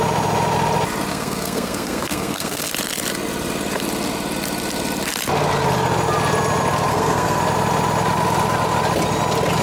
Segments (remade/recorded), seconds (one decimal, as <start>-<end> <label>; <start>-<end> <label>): 0.0-1.1 recorded; 1.1-2.7 remade; 2.7-6.9 recorded; 6.9-7.4 remade; 7.4-9.6 recorded